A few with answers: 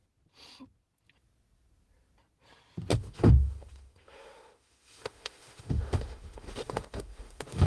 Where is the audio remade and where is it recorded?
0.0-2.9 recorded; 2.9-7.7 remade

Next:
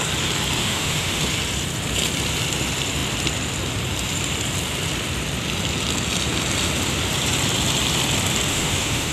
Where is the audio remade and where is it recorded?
0.0-0.6 recorded; 0.6-1.2 remade; 1.2-8.5 recorded; 8.5-9.1 remade

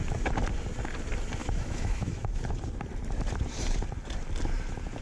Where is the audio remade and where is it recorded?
0.0-1.4 recorded; 1.4-2.4 remade; 2.4-5.0 recorded

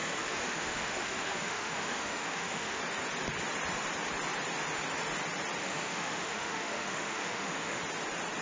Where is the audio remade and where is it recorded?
0.0-2.8 remade; 2.8-5.6 recorded; 5.6-7.8 remade; 7.8-8.4 recorded